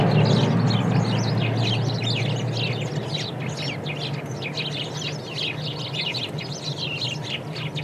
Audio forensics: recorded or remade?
recorded